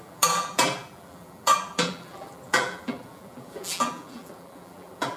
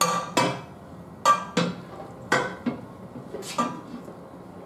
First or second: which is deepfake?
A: first